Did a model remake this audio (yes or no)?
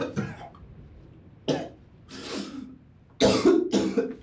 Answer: no